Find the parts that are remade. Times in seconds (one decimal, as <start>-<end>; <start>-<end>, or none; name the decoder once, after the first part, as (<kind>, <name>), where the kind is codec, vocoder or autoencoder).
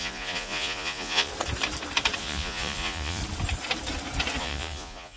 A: 0.0-1.3 (vocoder, Vocos); 2.2-3.2; 4.4-5.2